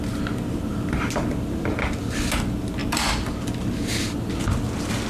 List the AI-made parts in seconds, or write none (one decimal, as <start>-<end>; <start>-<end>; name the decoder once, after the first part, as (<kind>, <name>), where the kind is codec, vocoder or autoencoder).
none